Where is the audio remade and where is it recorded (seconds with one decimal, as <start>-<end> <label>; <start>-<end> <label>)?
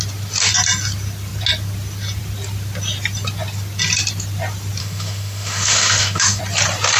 0.0-4.8 recorded; 4.8-6.4 remade; 6.4-7.0 recorded